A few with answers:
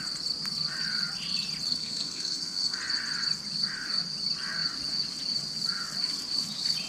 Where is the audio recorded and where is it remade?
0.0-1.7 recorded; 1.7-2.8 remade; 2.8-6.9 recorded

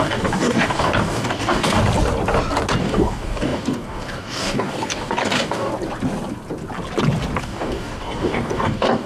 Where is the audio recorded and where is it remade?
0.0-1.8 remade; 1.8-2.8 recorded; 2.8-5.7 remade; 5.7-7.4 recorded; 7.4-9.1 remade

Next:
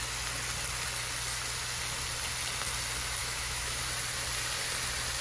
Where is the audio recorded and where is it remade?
0.0-3.2 recorded; 3.2-3.8 remade; 3.8-5.2 recorded

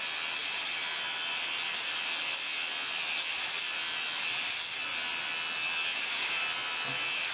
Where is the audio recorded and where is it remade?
0.0-7.3 recorded

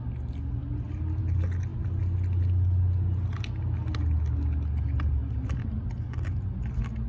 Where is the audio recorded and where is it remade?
0.0-7.1 recorded

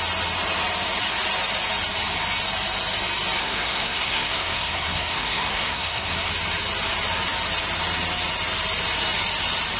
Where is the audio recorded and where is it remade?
0.0-3.4 recorded; 3.4-6.3 remade; 6.3-9.8 recorded